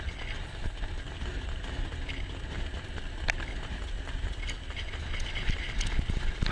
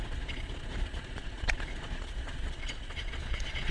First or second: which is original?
first